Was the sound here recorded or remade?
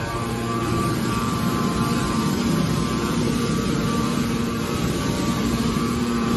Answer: remade